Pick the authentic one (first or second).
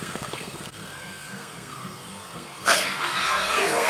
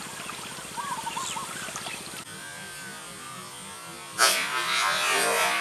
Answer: second